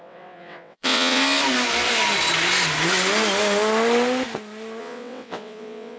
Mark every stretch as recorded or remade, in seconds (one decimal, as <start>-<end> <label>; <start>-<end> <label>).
0.0-1.2 remade; 1.2-4.8 recorded; 4.8-6.0 remade